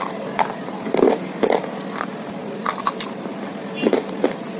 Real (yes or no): yes